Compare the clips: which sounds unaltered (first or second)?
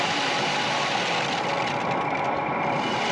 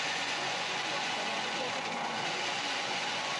first